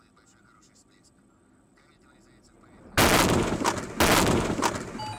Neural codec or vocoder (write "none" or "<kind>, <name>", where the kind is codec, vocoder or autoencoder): none